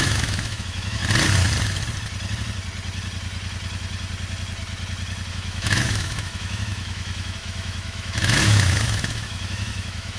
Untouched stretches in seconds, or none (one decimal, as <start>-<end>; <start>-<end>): 1.0-5.3